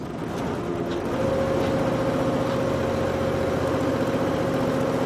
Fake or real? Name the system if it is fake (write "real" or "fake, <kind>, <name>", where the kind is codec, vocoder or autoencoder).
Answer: real